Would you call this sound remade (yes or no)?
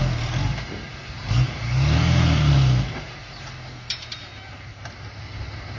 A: no